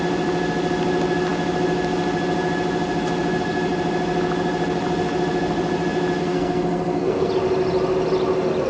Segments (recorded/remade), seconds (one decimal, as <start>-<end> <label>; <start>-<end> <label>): 0.0-6.2 recorded; 6.2-7.3 remade; 7.3-8.7 recorded